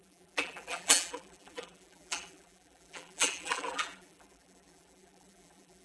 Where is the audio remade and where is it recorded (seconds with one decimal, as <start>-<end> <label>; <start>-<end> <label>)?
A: 0.0-5.8 remade